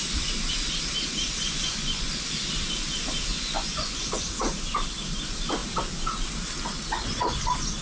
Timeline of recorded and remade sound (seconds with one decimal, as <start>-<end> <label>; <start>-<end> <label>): 0.0-1.4 recorded; 1.4-2.1 remade; 2.1-3.3 recorded; 3.3-4.1 remade; 4.1-7.8 recorded